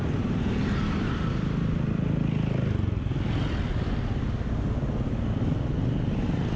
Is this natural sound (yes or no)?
yes